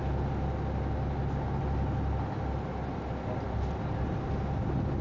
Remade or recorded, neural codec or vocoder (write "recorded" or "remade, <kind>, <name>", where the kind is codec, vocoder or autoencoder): recorded